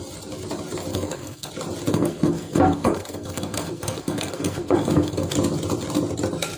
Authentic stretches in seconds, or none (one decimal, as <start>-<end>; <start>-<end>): 0.0-0.9; 1.5-1.9; 5.3-6.6